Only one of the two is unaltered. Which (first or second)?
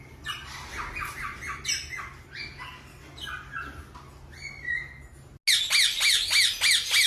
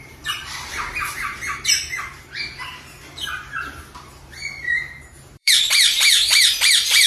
first